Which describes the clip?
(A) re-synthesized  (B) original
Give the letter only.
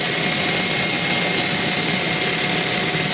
B